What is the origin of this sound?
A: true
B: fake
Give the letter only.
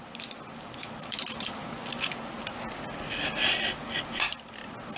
A